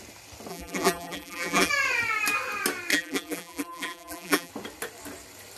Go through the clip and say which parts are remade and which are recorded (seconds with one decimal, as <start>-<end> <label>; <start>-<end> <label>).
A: 0.0-0.5 recorded; 0.5-1.7 remade; 1.7-2.9 recorded; 2.9-4.5 remade; 4.5-5.6 recorded